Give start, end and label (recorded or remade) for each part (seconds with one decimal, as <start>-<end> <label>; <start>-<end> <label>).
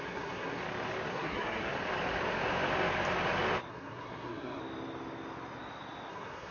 0.0-0.6 remade; 0.6-1.1 recorded; 1.1-1.7 remade; 1.7-3.7 recorded; 3.7-4.6 remade; 4.6-6.1 recorded; 6.1-6.5 remade